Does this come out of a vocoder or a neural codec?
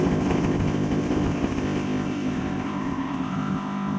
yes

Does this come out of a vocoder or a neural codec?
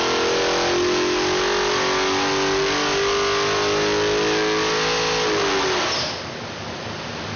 no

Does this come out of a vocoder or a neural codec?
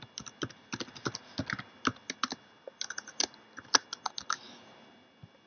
no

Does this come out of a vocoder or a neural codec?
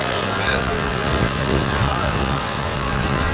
yes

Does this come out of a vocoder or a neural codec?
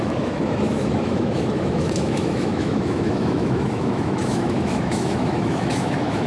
yes